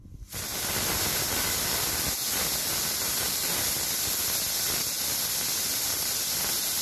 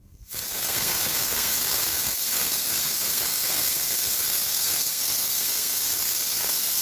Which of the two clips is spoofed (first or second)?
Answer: second